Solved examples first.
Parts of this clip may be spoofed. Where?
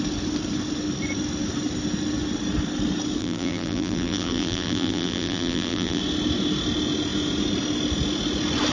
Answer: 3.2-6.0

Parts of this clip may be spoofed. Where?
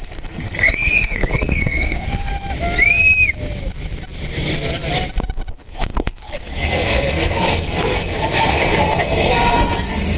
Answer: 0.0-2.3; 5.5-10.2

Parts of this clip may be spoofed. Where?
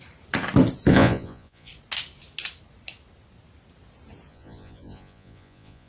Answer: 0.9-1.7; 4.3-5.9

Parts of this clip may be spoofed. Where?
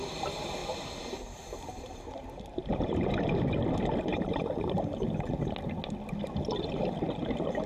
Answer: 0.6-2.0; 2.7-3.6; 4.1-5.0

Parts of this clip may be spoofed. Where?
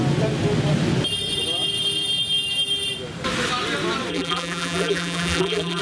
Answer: 4.1-5.8